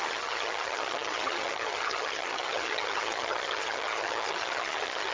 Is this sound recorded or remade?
remade